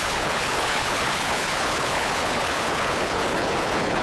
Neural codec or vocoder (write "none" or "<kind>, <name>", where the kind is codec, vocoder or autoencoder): codec, HILCodec